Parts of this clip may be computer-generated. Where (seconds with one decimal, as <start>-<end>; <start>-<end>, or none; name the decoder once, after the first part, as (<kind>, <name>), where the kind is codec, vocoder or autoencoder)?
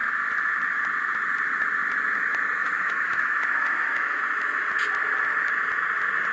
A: 2.6-4.2 (autoencoder, DAC-VAE)